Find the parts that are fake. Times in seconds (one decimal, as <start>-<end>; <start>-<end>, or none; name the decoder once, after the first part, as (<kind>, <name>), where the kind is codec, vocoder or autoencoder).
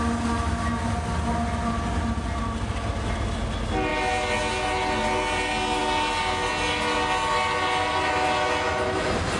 none